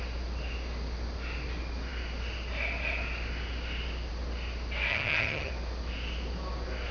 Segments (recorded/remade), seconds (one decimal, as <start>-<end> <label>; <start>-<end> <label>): 0.0-4.9 recorded; 4.9-5.5 remade; 5.5-6.9 recorded